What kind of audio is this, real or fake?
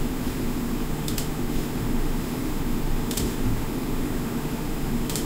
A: fake